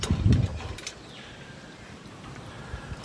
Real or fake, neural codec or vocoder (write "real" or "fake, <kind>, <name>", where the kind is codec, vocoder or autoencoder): fake, vocoder, BigVGAN v2